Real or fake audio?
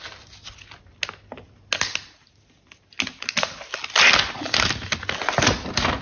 real